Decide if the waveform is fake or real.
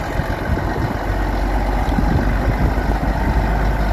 real